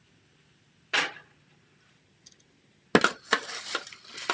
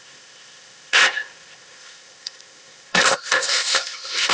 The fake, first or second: second